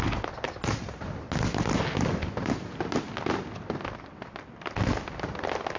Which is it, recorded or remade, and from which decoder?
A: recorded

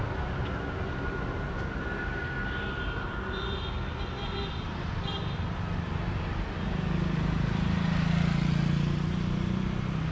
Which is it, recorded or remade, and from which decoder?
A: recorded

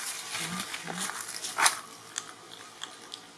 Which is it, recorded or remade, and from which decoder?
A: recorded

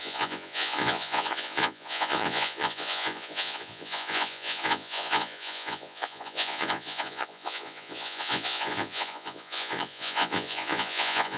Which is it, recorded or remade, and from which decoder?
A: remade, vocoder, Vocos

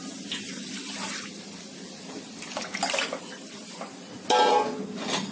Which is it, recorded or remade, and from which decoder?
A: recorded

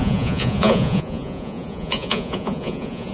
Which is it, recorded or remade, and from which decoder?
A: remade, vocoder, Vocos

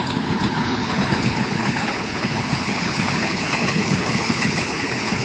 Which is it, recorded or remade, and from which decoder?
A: remade, codec, HILCodec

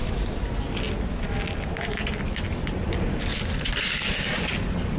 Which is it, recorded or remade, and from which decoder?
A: recorded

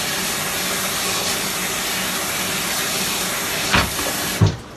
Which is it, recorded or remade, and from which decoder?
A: recorded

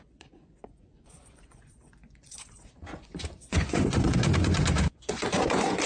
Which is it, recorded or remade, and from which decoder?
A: remade, vocoder, Vocos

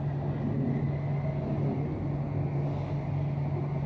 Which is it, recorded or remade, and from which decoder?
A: recorded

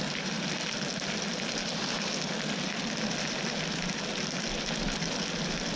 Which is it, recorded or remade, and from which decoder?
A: recorded